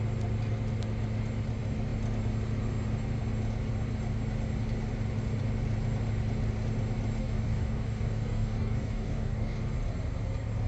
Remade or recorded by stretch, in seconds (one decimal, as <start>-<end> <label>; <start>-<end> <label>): 0.0-7.2 recorded; 7.2-9.6 remade; 9.6-10.7 recorded